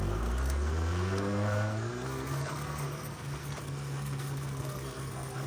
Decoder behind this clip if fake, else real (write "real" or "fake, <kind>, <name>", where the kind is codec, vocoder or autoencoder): fake, codec, SNAC